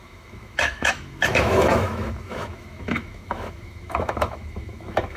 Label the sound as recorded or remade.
remade